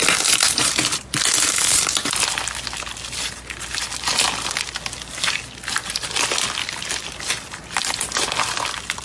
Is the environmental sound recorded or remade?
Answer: recorded